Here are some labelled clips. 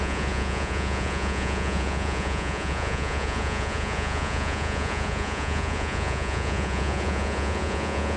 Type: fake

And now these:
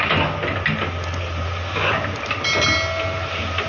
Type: real